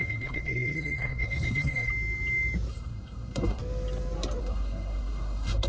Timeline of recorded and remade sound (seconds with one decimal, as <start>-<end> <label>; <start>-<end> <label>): 0.0-1.9 remade; 1.9-2.7 recorded; 2.7-3.6 remade; 3.6-4.4 recorded; 4.4-5.7 remade